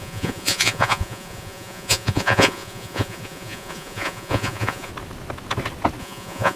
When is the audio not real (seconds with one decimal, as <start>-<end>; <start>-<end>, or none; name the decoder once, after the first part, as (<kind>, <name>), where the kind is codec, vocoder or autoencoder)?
0.0-4.9 (vocoder, Vocos); 6.0-6.6